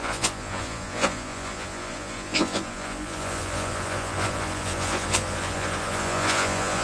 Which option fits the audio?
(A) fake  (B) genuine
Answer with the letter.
A